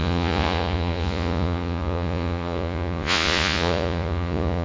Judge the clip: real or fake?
fake